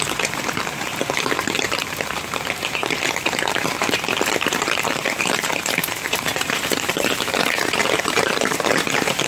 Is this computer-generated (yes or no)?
yes